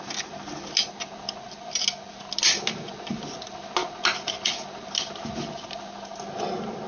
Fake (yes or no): no